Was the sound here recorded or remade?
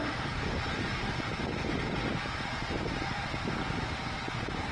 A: recorded